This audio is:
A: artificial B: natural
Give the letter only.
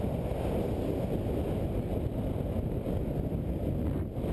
B